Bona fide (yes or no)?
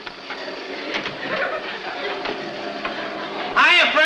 yes